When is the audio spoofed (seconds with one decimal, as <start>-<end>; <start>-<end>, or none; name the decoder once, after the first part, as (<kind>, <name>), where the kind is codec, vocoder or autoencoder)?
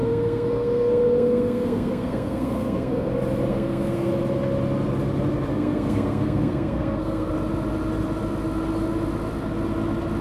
0.0-3.1 (codec, SNAC); 3.5-4.1; 5.5-7.3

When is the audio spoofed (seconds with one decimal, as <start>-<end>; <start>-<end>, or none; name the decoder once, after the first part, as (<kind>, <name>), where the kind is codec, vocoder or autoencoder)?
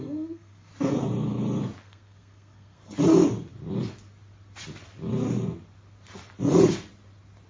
0.0-0.7 (codec, SNAC); 1.8-2.8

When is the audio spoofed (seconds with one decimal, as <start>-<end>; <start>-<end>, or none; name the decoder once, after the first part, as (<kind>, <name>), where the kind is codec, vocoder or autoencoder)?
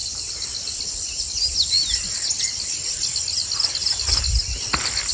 none